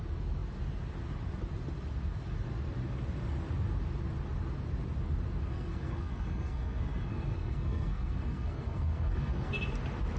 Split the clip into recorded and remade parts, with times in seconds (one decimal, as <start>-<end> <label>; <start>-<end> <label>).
0.0-5.5 recorded; 5.5-9.5 remade; 9.5-10.2 recorded